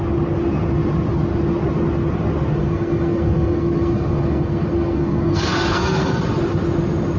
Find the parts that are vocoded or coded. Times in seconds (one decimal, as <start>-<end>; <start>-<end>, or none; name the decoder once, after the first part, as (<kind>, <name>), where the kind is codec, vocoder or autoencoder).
2.6-6.2 (codec, SNAC)